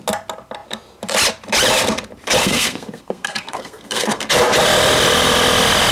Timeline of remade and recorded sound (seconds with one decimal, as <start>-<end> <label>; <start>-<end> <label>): 0.0-2.4 recorded; 2.4-4.3 remade; 4.3-5.9 recorded